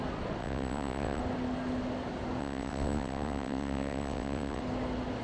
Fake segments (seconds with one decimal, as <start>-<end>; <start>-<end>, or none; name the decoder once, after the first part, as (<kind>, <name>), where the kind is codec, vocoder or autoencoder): 0.4-1.2 (vocoder, WaveNeXt); 2.4-4.6